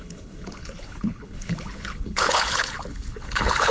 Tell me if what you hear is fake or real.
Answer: fake